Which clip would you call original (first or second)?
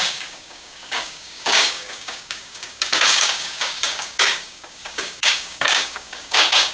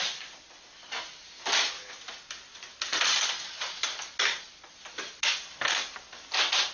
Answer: second